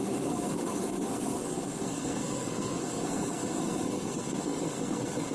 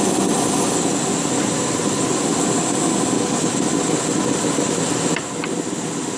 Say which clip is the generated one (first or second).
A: first